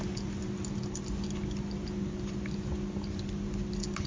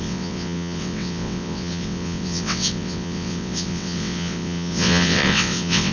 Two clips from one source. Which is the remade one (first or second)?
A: second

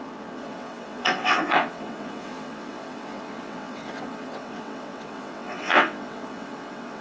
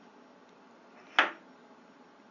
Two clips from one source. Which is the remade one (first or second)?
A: first